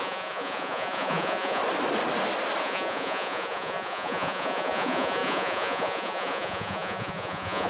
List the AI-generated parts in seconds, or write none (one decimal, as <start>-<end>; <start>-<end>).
0.0-1.6; 2.6-7.7